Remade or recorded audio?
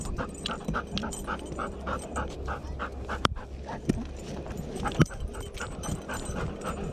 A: recorded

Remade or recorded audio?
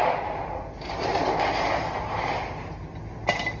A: recorded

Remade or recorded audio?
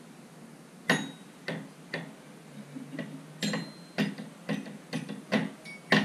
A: recorded